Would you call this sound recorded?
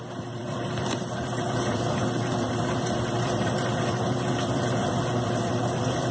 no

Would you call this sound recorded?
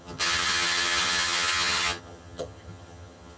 no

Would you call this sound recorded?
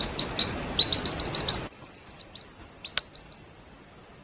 yes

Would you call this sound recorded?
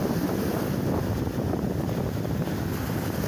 yes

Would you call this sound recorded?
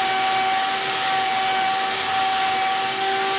yes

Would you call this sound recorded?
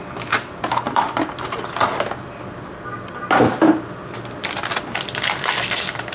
yes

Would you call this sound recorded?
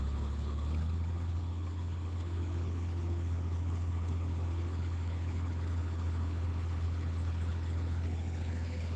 no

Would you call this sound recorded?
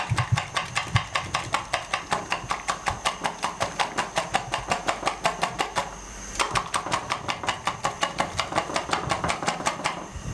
yes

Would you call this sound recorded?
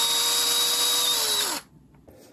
yes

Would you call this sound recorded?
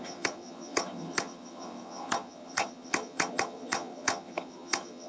no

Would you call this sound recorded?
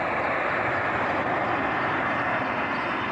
yes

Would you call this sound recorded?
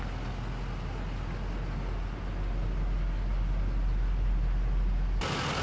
yes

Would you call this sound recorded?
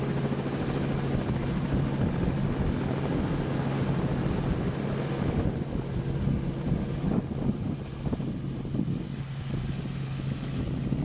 yes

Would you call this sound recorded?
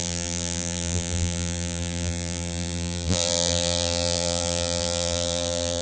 no